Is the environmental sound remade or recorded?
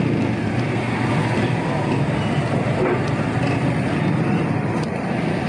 recorded